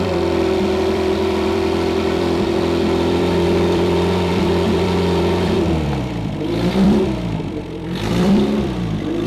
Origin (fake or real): fake